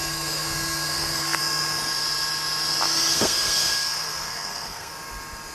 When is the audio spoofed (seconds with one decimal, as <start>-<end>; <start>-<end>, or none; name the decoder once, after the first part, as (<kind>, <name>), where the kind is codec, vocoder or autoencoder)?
0.0-1.4 (codec, SNAC); 3.1-4.9